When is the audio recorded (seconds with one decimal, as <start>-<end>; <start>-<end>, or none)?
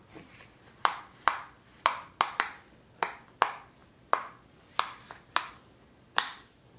0.0-6.8